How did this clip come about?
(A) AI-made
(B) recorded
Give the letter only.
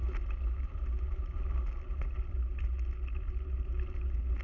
B